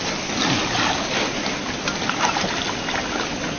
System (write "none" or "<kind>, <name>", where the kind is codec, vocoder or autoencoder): none